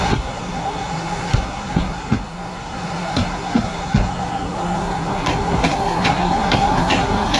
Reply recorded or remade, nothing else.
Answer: remade